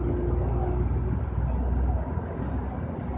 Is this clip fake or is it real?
real